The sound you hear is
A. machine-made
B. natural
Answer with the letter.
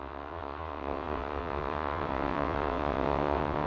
A